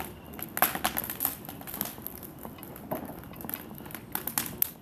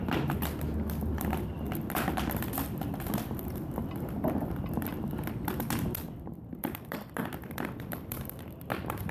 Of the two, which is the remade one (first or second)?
second